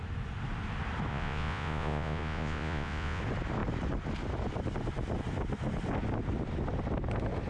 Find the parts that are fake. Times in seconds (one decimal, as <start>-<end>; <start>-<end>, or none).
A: 1.1-3.2